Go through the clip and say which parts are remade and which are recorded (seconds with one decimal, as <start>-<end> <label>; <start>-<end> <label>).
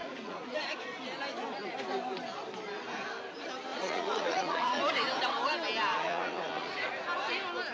0.0-1.0 remade; 1.0-3.7 recorded; 3.7-4.8 remade; 4.8-5.9 recorded; 5.9-6.9 remade; 6.9-7.7 recorded